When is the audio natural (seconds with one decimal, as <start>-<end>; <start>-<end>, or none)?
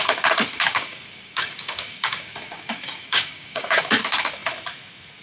0.0-0.7; 3.8-5.2